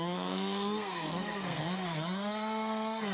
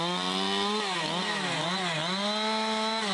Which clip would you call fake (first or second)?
first